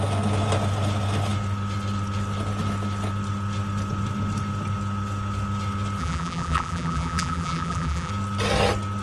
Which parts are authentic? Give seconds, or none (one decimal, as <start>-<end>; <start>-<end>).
0.0-6.0; 8.1-9.0